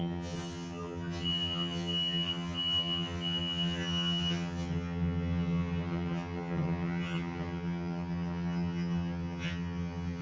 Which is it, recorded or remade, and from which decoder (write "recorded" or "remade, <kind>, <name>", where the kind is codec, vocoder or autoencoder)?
remade, vocoder, HiFi-GAN